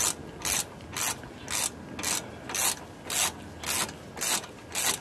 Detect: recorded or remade recorded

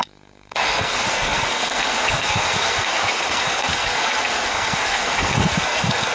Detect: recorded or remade remade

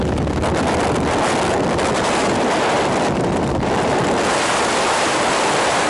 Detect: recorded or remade recorded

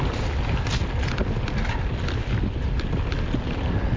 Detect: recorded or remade recorded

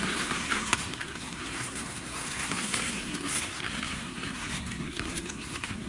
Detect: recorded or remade remade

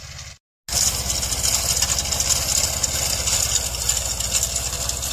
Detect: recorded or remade recorded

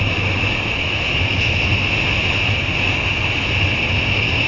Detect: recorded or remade recorded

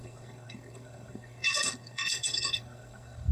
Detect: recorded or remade remade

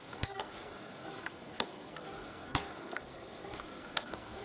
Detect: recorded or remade remade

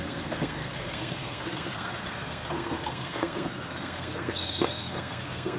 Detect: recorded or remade remade